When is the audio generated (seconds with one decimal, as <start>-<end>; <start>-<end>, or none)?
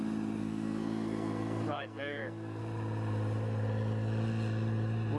0.4-2.6